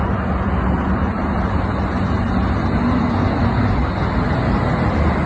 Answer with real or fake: real